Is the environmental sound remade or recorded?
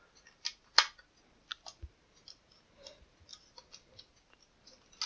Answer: recorded